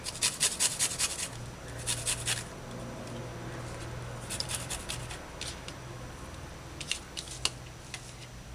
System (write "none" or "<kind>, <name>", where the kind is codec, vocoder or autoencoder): none